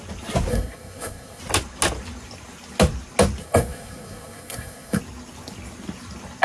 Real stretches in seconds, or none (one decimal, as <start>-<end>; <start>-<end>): 0.0-0.5; 1.4-3.4; 5.0-6.4